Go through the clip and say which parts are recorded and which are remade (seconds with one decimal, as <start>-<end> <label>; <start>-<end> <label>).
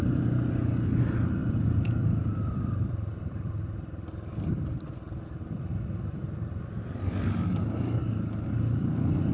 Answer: 0.0-1.4 recorded; 1.4-6.6 remade; 6.6-9.3 recorded